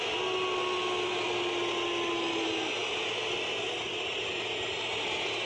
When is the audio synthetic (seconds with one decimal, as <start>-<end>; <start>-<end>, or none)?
none